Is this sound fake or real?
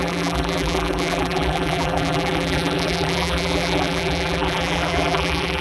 fake